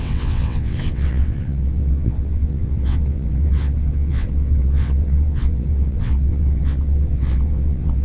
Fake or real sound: fake